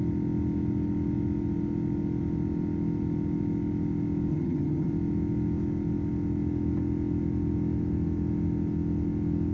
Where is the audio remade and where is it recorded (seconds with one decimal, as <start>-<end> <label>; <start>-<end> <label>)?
0.0-4.3 recorded; 4.3-4.9 remade; 4.9-9.5 recorded